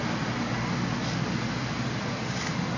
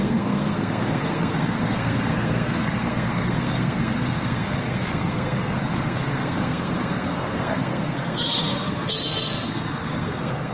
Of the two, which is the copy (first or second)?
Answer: second